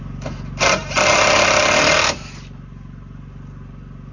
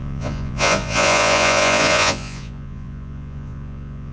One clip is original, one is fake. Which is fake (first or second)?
second